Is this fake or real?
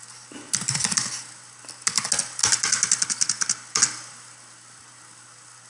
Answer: real